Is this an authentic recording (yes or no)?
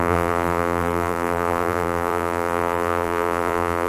no